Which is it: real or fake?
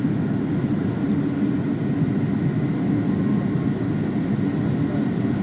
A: real